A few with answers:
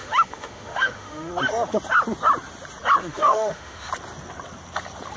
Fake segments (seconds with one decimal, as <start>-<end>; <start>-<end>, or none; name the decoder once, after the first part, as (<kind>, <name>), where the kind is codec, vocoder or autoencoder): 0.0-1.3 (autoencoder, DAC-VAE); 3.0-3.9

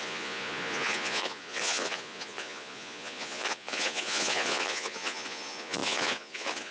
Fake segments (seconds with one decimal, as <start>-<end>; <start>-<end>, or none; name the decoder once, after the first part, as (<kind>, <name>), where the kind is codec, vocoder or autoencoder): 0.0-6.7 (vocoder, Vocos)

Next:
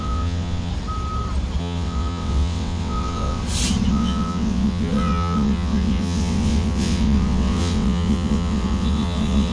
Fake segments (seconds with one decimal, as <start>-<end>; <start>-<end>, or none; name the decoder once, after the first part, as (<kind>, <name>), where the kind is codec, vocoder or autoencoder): 0.0-0.7 (vocoder, WaveNeXt); 1.6-3.4; 3.9-9.5

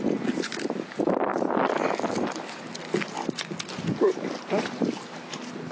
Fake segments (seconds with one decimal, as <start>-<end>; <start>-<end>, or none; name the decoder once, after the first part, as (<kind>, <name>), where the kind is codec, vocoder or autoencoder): none

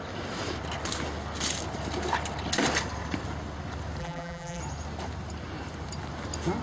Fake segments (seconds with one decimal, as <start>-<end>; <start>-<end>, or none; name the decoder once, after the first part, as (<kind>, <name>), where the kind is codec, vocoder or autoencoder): 4.0-4.6 (vocoder, BigVGAN v2)

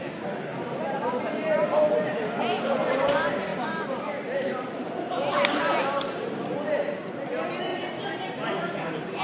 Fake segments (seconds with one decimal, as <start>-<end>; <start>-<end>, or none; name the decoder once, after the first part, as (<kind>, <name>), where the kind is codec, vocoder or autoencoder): 0.5-1.0 (vocoder, BigVGAN v2); 3.5-6.9; 7.7-9.2